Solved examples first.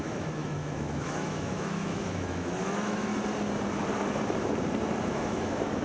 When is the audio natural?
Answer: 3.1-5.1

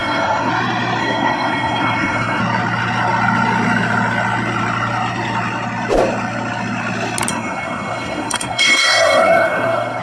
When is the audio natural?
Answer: 0.5-1.0; 2.4-7.3

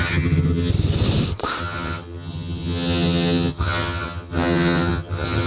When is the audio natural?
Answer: 0.7-1.6

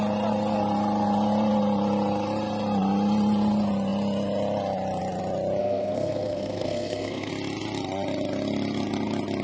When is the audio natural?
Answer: 0.0-5.6; 7.3-9.4

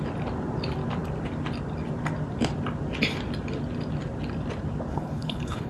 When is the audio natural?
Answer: 0.0-4.9

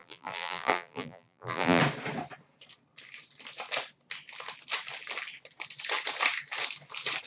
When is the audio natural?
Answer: 1.8-7.3

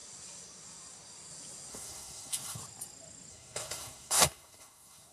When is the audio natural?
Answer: 0.0-1.7; 2.6-3.3